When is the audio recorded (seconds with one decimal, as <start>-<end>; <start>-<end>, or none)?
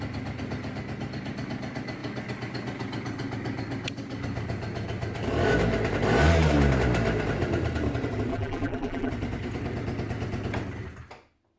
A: 0.0-8.3; 9.1-11.6